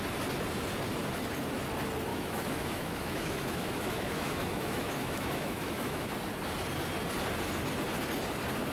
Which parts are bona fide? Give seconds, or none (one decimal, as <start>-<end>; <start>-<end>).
0.0-2.1; 6.1-8.7